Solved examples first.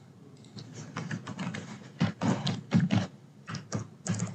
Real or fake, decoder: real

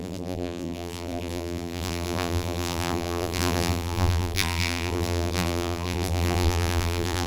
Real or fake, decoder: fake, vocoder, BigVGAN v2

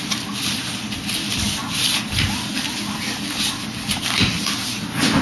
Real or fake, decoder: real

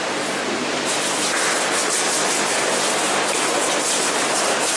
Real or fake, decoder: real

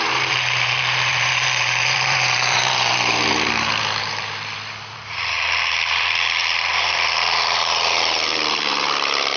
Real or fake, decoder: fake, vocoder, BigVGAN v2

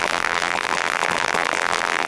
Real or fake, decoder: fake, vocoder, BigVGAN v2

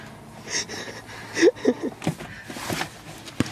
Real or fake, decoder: real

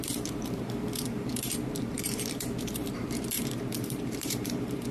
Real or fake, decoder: fake, vocoder, BigVGAN v2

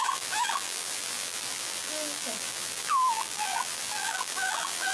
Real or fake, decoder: fake, vocoder, BigVGAN v2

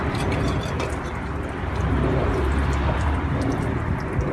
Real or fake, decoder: fake, vocoder, BigVGAN v2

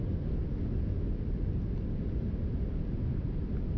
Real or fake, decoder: real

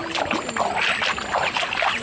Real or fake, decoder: real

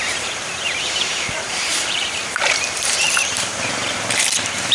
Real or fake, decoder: fake, vocoder, BigVGAN v2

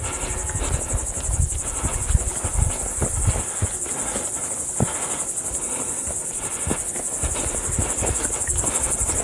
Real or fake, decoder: real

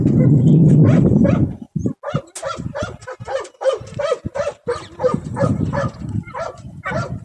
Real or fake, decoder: real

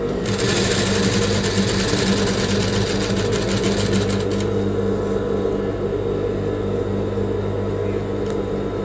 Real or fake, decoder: real